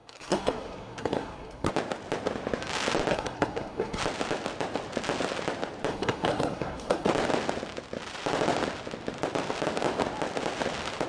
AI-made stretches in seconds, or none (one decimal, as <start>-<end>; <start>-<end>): 0.0-1.7; 3.1-4.0; 5.9-7.1